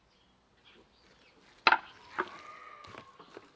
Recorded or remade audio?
recorded